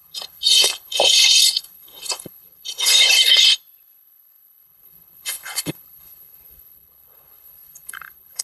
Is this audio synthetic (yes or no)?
yes